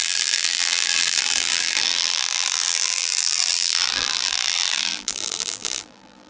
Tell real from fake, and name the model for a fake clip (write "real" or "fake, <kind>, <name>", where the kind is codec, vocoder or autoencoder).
fake, vocoder, BigVGAN v2